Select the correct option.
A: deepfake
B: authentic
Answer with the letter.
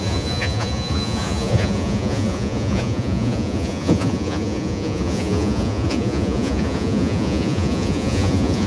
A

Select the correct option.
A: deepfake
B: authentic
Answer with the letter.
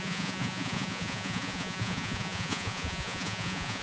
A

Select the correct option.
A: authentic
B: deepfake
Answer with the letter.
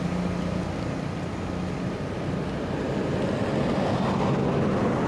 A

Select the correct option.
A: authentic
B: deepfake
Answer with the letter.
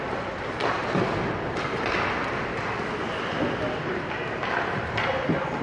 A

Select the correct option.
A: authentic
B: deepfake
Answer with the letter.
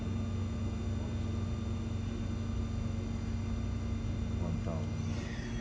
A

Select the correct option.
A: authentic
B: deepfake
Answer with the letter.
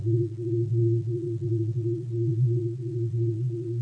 B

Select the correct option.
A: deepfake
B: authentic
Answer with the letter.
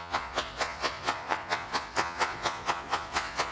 A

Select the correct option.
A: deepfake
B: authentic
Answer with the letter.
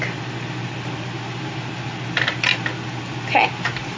B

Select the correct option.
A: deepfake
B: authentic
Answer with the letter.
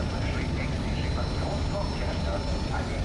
B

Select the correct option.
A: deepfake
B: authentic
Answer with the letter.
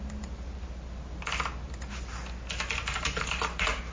B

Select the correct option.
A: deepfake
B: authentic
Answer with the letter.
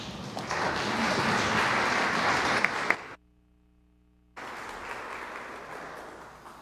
B